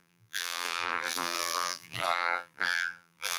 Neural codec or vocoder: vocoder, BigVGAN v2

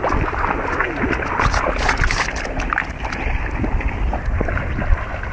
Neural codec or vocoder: none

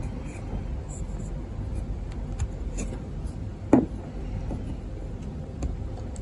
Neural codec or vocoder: none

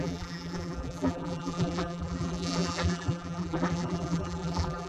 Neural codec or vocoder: vocoder, BigVGAN v2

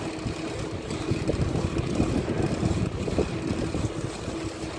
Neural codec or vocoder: none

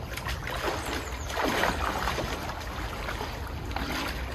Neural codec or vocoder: none